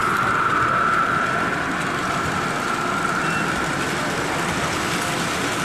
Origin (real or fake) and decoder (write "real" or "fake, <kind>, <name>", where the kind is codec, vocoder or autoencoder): real